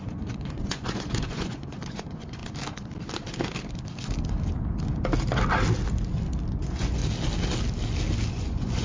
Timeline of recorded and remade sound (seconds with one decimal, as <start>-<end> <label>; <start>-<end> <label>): 0.0-2.4 remade; 2.4-6.5 recorded; 6.5-7.0 remade; 7.0-8.3 recorded; 8.3-8.8 remade